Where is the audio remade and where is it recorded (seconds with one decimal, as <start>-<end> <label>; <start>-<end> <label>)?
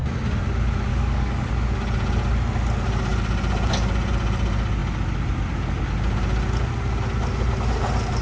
0.0-0.9 recorded; 0.9-1.5 remade; 1.5-8.2 recorded